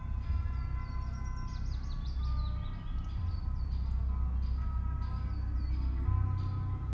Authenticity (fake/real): real